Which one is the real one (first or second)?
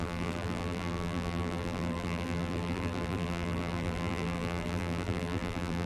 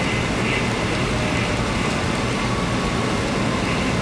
second